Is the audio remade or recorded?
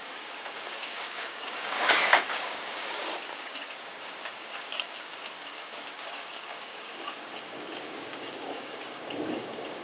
remade